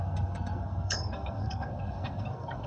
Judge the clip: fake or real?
fake